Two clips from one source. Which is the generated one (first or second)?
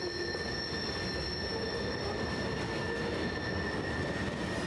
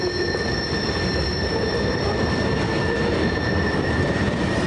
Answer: second